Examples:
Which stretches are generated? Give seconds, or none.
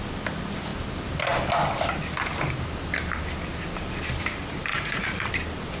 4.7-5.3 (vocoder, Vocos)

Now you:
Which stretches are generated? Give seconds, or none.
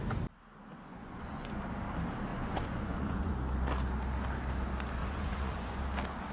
0.7-1.6 (vocoder, Vocos); 2.3-3.3; 5.0-5.8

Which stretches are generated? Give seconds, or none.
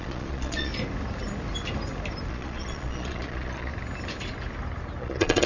0.0-0.7 (vocoder, Vocos); 2.3-3.7; 5.0-5.5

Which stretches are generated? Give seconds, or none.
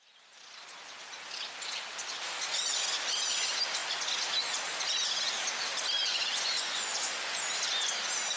6.1-7.4 (vocoder, Vocos)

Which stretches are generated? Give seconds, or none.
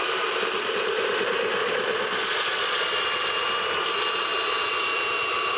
1.6-3.0 (vocoder, Vocos)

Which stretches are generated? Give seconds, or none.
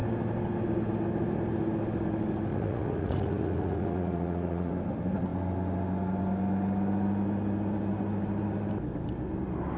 2.5-4.7 (vocoder, Vocos)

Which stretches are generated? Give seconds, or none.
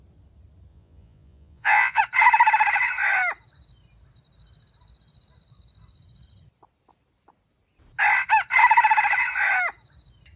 0.7-2.0 (vocoder, Vocos)